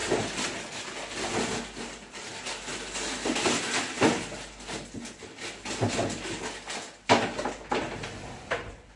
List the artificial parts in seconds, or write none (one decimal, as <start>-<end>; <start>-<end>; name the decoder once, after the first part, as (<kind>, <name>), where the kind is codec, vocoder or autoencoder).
none